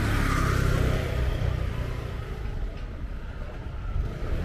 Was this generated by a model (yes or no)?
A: no